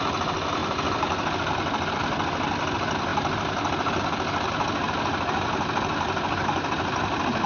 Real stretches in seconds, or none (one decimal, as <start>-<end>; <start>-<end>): 0.0-7.5